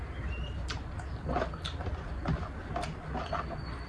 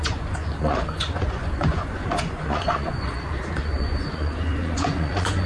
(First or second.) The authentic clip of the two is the first